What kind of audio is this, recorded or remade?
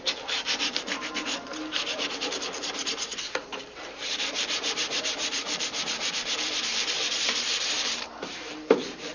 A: remade